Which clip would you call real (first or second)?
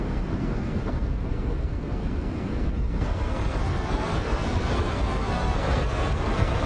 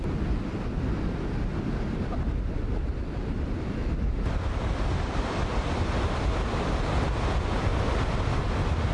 second